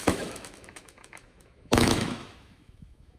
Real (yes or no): no